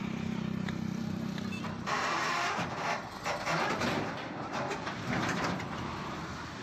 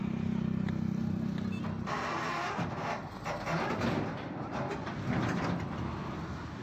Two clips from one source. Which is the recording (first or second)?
second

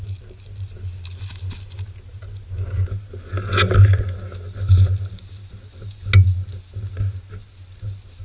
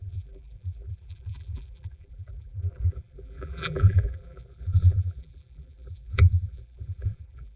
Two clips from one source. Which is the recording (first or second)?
first